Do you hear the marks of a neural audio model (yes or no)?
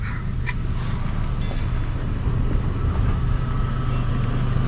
no